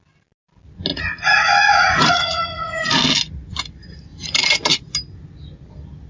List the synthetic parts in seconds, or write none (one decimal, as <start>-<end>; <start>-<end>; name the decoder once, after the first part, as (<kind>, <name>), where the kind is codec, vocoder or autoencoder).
0.9-2.9 (vocoder, Vocos); 4.1-4.9